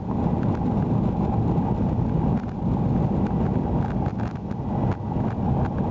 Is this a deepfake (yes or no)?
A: no